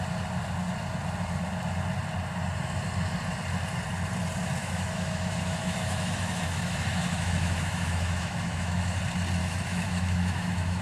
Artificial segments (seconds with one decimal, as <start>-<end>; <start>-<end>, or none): 4.6-9.0; 9.4-10.8